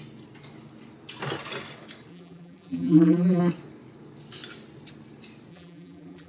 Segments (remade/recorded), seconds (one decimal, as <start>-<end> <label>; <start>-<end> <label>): 0.0-2.1 recorded; 2.1-3.4 remade; 3.4-5.5 recorded; 5.5-6.3 remade